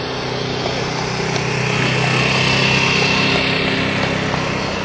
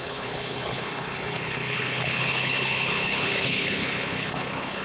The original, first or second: first